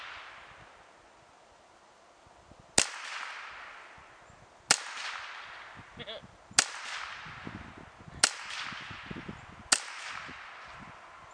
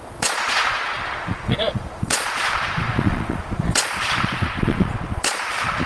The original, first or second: first